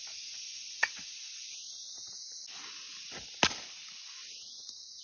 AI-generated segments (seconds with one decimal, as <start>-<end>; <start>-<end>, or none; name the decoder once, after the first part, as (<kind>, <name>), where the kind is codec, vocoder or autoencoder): none